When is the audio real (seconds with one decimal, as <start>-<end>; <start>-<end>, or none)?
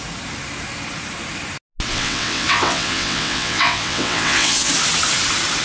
0.0-1.9; 4.7-5.6